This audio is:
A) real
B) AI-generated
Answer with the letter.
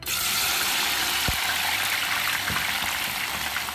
A